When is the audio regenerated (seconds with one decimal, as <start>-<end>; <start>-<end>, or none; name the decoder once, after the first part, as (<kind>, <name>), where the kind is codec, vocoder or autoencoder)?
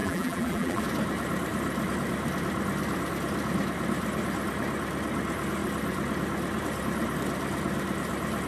0.0-0.8 (vocoder, BigVGAN v2)